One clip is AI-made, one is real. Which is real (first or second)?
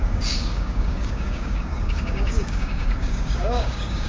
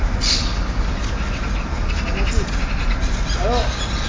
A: second